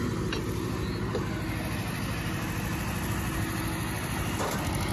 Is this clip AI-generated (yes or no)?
no